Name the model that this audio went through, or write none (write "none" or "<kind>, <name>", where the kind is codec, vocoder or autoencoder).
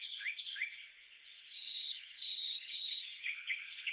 codec, HILCodec